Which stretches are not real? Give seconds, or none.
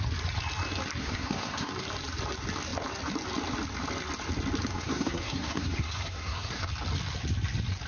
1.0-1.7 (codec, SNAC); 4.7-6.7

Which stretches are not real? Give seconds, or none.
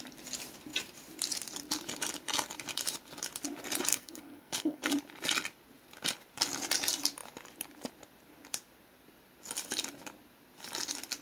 3.9-4.9 (codec, SNAC)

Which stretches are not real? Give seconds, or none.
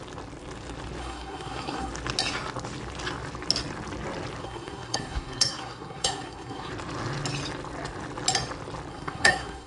1.0-1.9 (codec, SNAC); 4.4-6.7; 8.9-9.7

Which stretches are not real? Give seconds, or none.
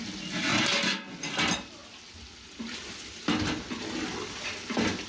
none